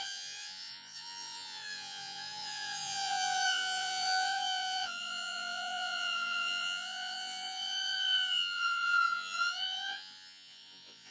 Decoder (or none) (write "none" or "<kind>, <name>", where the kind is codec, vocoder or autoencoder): vocoder, Vocos